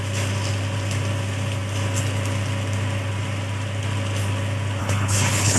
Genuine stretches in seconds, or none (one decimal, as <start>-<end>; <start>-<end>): 0.0-4.8